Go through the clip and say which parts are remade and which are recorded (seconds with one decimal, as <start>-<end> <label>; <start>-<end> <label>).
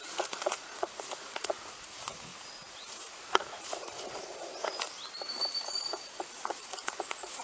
0.0-4.5 remade; 4.5-5.7 recorded; 5.7-7.4 remade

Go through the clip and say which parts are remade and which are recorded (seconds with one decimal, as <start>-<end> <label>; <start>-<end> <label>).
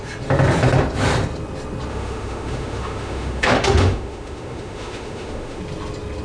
0.0-1.9 recorded; 1.9-5.6 remade; 5.6-6.2 recorded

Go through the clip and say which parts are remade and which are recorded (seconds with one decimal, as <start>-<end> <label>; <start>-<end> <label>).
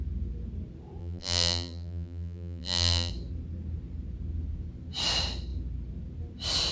0.0-1.0 recorded; 1.0-3.1 remade; 3.1-6.7 recorded